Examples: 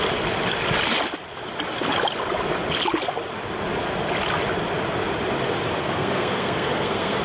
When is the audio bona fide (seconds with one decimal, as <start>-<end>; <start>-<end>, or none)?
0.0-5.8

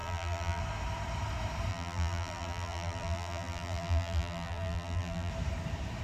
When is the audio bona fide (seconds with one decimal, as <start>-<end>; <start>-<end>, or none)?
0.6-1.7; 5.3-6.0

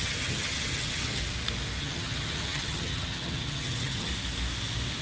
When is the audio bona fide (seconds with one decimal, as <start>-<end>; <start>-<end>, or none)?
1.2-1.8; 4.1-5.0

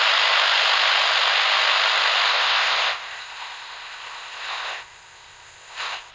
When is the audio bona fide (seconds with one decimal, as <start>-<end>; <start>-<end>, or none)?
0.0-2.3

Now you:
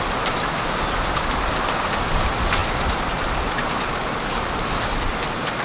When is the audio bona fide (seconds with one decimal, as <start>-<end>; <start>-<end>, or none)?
0.0-5.6

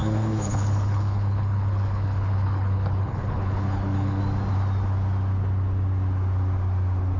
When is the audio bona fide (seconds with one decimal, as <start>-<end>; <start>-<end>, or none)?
4.2-7.2